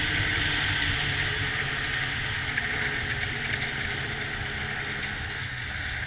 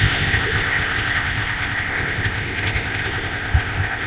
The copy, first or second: second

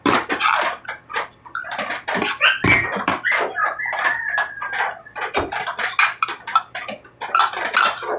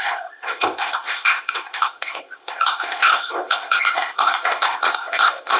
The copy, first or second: second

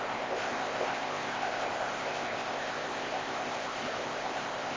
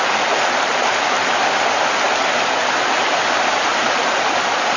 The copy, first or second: first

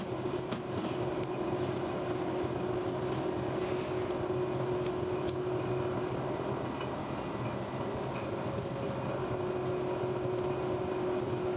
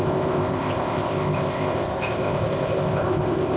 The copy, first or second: second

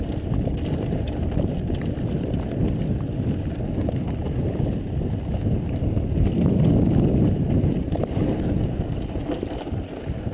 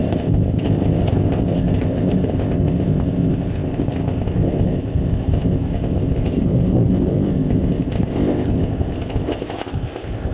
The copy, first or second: second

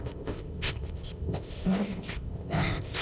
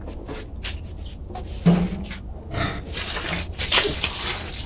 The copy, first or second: first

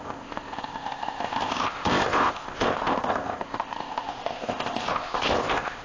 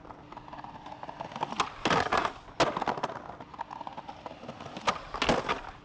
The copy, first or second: first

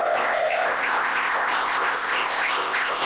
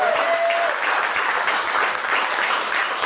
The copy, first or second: first